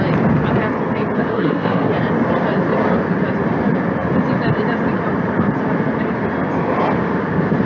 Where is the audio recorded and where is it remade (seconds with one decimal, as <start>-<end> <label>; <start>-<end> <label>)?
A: 0.0-1.3 recorded; 1.3-1.9 remade; 1.9-7.7 recorded